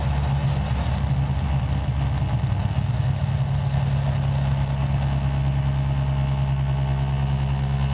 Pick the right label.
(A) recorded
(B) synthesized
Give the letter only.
A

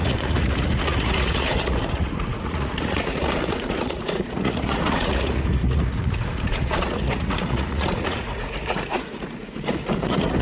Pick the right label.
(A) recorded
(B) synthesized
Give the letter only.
B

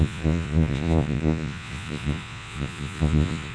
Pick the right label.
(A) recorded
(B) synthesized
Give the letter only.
B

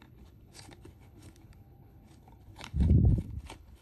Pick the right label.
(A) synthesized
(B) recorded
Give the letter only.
A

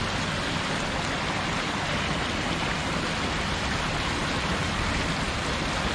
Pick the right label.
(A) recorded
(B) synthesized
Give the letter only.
A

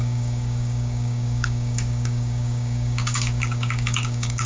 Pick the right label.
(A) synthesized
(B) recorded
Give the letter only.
A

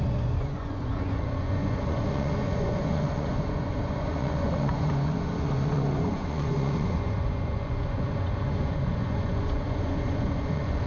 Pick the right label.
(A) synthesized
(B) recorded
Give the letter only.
A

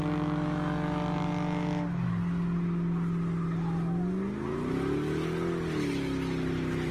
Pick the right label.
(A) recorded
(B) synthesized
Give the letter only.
A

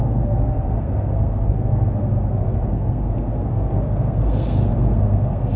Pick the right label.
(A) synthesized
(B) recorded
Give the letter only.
A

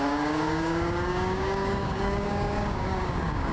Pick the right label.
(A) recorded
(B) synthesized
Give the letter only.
B